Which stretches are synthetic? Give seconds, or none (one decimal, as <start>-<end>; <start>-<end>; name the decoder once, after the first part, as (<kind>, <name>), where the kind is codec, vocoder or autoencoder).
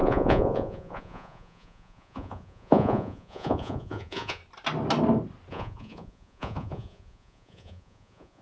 0.0-4.4 (vocoder, Vocos); 5.5-8.4